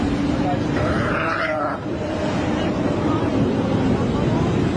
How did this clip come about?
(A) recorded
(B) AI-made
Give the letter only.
B